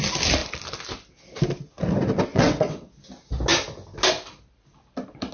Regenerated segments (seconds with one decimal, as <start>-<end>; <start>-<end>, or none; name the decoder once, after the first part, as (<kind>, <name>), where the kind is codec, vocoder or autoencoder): 2.3-2.9 (vocoder, WaveNeXt)